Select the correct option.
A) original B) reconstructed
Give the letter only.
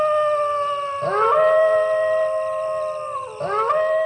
A